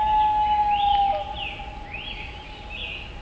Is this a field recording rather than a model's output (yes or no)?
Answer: yes